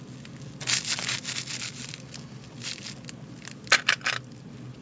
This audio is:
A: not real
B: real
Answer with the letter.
B